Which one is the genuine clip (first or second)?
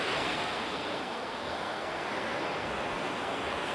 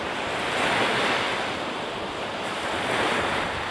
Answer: second